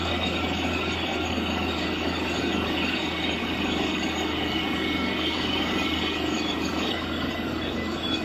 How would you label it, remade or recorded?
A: remade